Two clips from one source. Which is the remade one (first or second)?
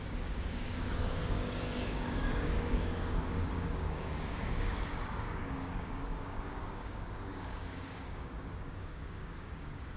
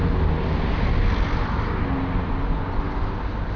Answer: first